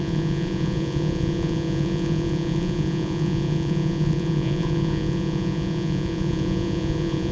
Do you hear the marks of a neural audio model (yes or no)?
yes